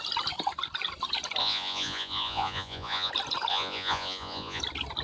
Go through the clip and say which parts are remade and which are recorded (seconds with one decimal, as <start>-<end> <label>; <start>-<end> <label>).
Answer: 0.0-1.4 recorded; 1.4-3.1 remade; 3.1-3.5 recorded; 3.5-4.6 remade; 4.6-5.0 recorded